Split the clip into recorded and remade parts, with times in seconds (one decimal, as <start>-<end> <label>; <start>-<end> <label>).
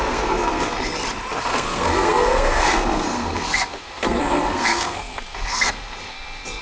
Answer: 0.0-0.9 remade; 0.9-1.4 recorded; 1.4-6.6 remade